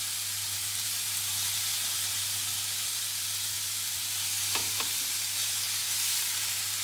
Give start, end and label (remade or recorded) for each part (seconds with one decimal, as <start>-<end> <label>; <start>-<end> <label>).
0.0-6.8 recorded